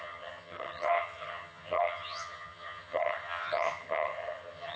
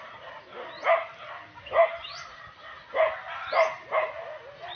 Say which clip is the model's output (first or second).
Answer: first